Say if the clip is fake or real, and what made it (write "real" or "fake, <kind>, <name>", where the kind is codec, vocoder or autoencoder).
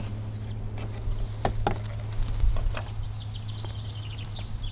real